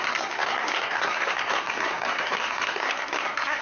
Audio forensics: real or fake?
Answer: fake